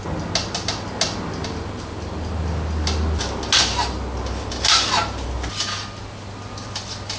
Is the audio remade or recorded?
recorded